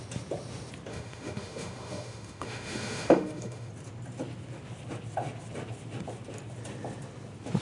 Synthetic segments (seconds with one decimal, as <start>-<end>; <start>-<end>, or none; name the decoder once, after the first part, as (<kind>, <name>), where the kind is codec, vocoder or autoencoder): 0.9-3.7 (autoencoder, DAC-VAE)